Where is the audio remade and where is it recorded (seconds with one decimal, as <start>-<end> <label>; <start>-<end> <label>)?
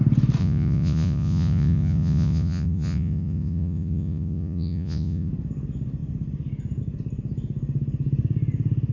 0.0-0.4 recorded; 0.4-5.3 remade; 5.3-8.9 recorded